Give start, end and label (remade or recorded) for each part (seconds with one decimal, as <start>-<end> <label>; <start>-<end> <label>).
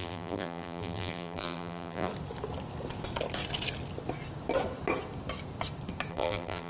0.0-2.1 remade; 2.1-6.1 recorded; 6.1-6.7 remade